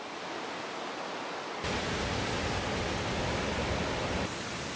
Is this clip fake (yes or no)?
no